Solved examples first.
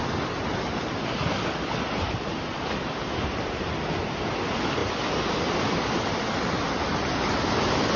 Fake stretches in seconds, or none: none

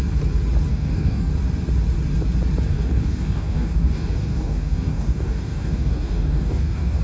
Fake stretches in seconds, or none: 0.7-1.3; 2.7-7.0

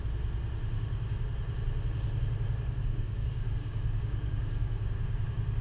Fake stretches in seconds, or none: 2.8-5.6